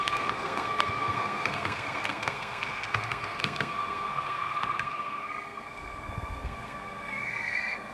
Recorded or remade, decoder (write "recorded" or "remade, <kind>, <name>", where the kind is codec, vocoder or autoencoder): remade, codec, SNAC